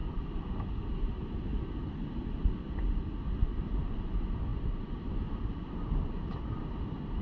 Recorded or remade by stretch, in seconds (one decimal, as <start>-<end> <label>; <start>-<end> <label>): 0.0-7.2 recorded